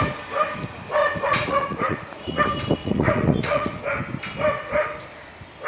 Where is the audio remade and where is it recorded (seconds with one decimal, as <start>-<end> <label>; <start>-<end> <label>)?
0.0-1.0 recorded; 1.0-2.4 remade; 2.4-2.8 recorded; 2.8-3.8 remade; 3.8-5.7 recorded